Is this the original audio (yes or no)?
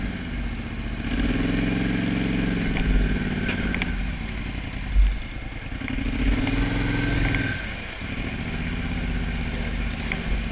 yes